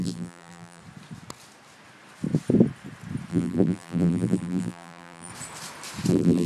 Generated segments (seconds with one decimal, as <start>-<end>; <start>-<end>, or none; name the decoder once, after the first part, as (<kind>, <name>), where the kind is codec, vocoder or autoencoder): 0.0-0.8 (vocoder, BigVGAN v2); 3.3-5.3; 6.1-6.5